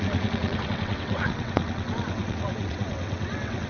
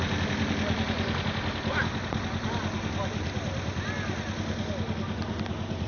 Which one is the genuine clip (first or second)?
second